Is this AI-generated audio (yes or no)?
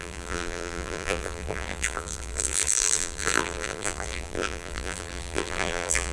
yes